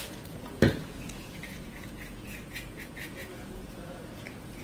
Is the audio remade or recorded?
remade